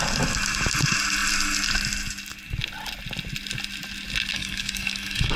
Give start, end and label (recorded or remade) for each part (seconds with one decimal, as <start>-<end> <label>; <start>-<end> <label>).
0.0-4.3 recorded; 4.3-5.4 remade